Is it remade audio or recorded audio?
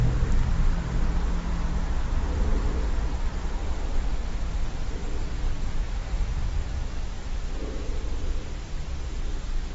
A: recorded